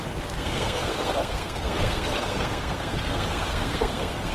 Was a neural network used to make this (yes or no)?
yes